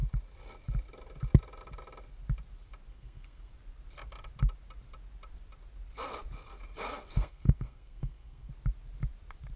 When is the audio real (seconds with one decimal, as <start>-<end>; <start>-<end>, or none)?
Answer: 0.0-2.9; 3.5-7.1; 8.5-9.6

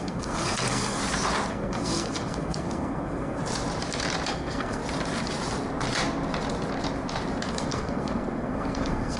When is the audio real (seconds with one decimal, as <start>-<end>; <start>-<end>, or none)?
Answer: 1.0-1.5; 3.4-4.3; 4.8-7.5

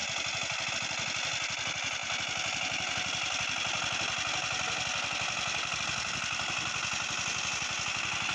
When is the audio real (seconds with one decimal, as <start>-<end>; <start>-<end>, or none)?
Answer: 0.0-8.3

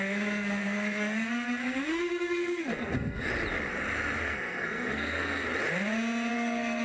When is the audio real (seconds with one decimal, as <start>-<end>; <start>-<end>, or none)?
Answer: 3.3-4.2; 5.5-6.3

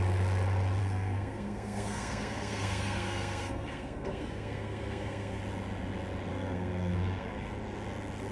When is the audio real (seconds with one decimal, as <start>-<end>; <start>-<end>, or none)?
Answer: 0.0-0.8; 5.4-6.3; 7.5-8.3

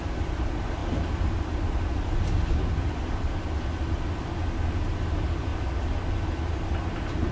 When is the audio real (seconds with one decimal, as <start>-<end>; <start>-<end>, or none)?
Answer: 0.0-7.3

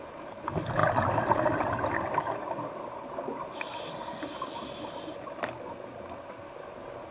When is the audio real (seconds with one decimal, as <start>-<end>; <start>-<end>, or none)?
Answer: 0.0-7.1